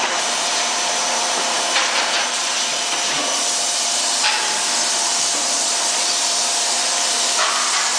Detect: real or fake fake